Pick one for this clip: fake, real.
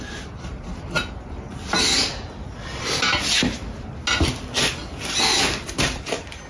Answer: real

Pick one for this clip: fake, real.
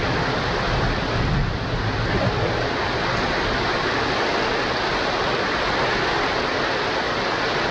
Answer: real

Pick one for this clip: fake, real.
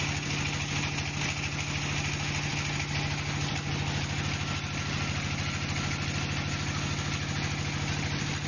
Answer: real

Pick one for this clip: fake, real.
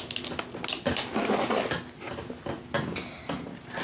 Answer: real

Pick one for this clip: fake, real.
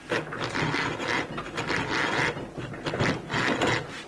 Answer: real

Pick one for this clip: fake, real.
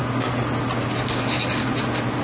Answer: real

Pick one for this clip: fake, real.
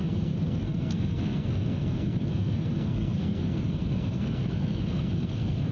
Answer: fake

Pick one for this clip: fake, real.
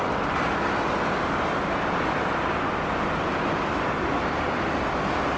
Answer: real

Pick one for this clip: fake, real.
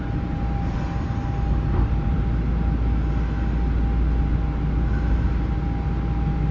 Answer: real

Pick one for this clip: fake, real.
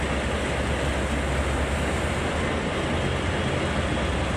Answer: real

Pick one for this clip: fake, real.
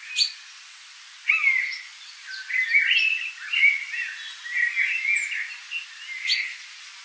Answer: real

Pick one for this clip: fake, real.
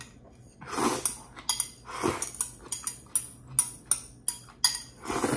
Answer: real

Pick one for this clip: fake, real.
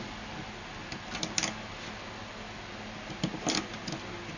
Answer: real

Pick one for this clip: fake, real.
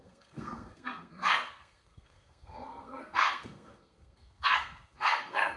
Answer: fake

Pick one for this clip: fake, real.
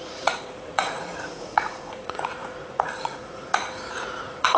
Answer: fake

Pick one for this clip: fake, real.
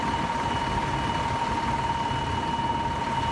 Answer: real